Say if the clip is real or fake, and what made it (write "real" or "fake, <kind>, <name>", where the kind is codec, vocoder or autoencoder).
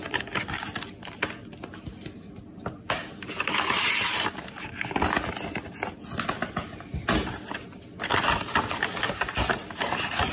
real